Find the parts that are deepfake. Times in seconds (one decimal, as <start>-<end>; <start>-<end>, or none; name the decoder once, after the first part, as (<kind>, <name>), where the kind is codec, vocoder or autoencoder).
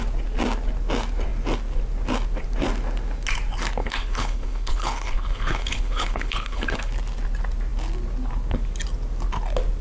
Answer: 3.8-6.9 (codec, HILCodec)